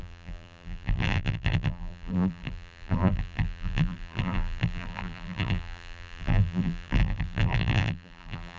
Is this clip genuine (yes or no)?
no